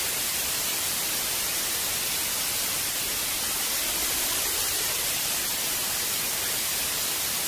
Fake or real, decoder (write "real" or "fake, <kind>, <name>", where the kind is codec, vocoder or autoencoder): real